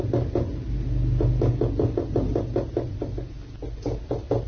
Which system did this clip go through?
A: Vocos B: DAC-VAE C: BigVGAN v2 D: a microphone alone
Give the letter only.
D